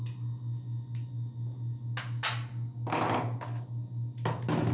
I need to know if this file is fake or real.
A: real